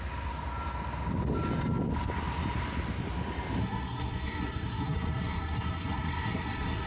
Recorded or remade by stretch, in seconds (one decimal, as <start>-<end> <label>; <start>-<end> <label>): 0.0-3.6 recorded; 3.6-6.9 remade